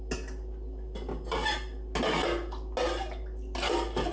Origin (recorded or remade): recorded